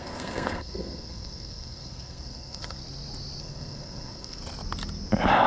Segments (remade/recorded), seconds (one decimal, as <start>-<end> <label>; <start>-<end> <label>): 0.0-2.8 remade; 2.8-3.4 recorded; 3.4-4.4 remade; 4.4-5.5 recorded